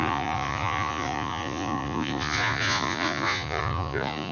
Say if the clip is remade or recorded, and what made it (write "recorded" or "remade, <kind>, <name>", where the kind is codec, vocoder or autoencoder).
remade, vocoder, Vocos